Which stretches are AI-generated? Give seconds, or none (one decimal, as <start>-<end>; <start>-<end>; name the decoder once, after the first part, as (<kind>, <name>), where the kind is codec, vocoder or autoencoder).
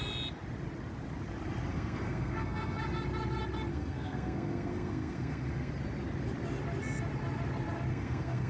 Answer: 1.7-2.8 (codec, SNAC); 3.7-5.7; 7.9-8.5